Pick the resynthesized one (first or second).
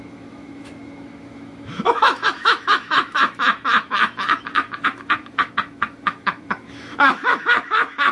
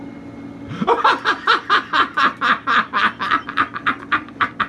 first